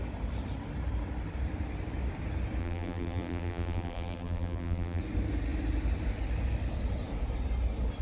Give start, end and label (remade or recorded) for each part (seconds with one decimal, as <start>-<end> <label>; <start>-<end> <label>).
0.0-2.6 recorded; 2.6-5.0 remade; 5.0-8.0 recorded